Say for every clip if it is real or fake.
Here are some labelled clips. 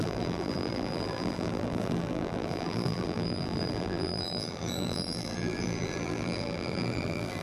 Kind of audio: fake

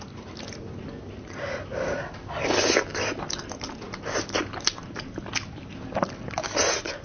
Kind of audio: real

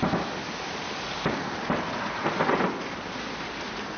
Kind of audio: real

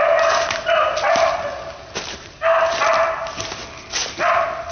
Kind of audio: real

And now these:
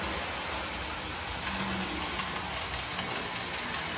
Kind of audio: real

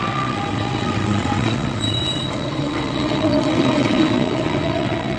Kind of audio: fake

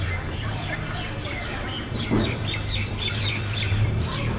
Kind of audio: fake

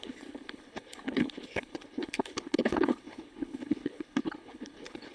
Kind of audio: fake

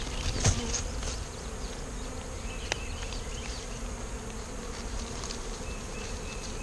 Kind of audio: real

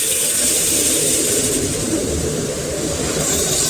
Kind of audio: fake